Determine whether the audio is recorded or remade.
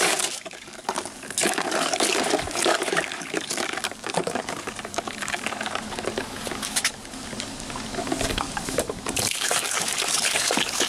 remade